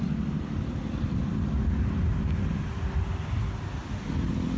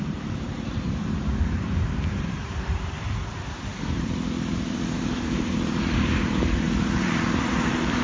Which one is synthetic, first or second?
second